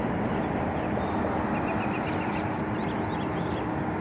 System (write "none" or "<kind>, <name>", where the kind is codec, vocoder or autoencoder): none